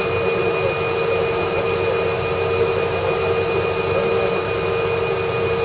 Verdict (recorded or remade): recorded